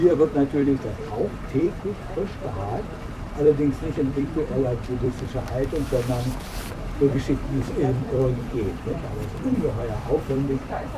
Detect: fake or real fake